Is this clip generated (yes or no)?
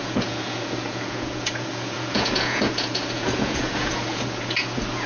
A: yes